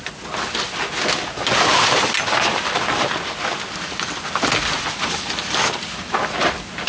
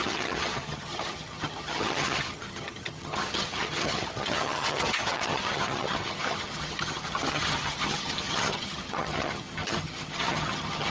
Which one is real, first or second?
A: first